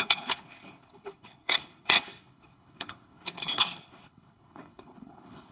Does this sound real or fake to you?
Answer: fake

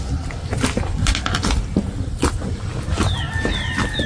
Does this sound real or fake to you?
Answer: real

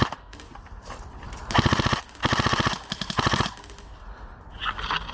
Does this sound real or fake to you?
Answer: real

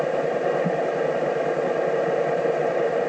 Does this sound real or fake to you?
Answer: real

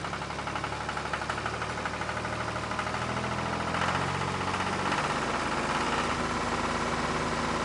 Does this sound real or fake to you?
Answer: real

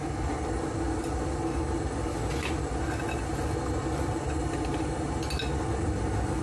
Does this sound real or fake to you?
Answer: real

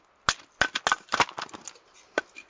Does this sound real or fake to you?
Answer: real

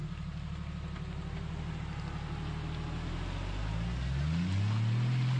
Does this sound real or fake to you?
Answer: real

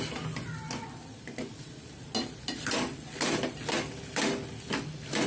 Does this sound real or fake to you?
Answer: real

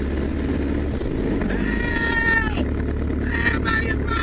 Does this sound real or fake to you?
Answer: real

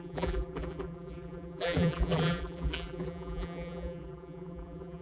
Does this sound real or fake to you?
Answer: fake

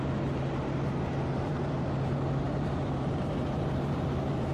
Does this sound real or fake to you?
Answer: fake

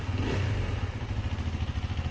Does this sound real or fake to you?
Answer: real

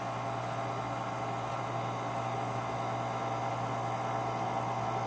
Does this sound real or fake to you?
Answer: real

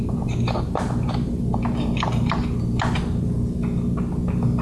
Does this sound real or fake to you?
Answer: real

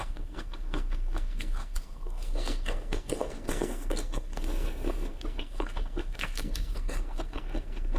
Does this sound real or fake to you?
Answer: fake